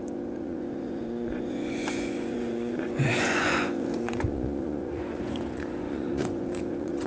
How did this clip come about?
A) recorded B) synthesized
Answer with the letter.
B